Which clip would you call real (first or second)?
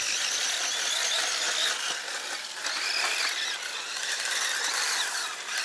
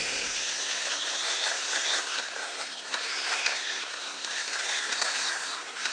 first